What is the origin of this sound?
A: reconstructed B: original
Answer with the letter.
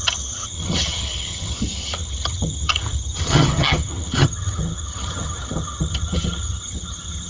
A